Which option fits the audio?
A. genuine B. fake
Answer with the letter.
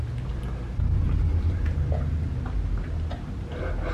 A